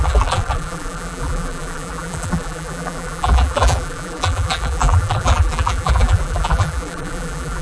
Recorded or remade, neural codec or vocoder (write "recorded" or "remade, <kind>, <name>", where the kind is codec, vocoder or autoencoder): remade, vocoder, BigVGAN v2